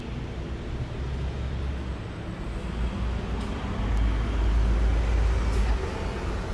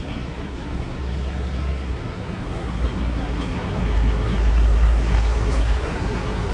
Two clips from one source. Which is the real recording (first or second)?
first